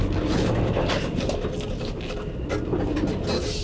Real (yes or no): yes